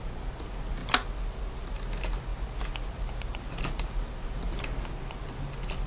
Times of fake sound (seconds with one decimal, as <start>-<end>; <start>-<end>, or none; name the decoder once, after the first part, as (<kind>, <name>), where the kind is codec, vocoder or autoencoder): none